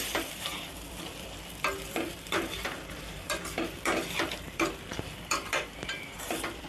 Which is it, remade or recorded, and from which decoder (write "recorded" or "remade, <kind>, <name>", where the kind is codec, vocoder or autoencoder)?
remade, vocoder, BigVGAN v2